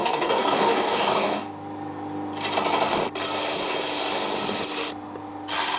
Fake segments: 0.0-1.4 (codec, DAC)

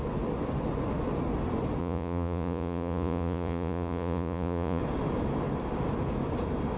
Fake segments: 1.8-4.8 (vocoder, Vocos)

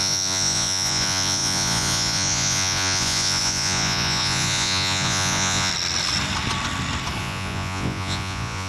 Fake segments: 0.0-5.7 (vocoder, Vocos); 7.2-8.7

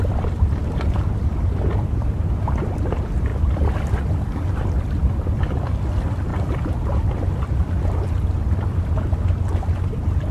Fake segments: none

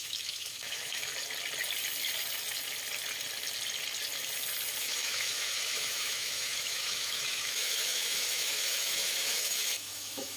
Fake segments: 0.0-1.1 (autoencoder, DAC-VAE); 4.8-10.4

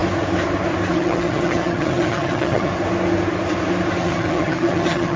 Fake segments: 0.9-2.7 (vocoder, HiFi-GAN); 4.0-5.2

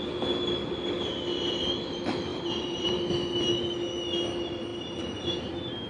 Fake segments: 2.3-3.0 (vocoder, BigVGAN v2); 4.7-5.5

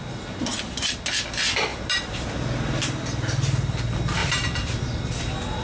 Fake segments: 1.7-2.3 (vocoder, BigVGAN v2); 4.2-4.8